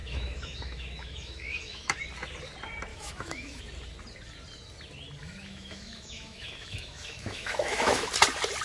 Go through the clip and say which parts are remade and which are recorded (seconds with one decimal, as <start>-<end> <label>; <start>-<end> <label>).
0.0-2.0 remade; 2.0-2.9 recorded; 2.9-3.6 remade; 3.6-5.2 recorded; 5.2-8.1 remade; 8.1-8.6 recorded